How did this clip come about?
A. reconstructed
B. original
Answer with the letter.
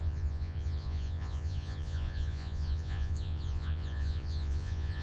A